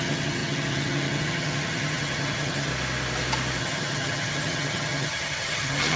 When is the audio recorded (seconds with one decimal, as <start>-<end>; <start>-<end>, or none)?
2.7-3.6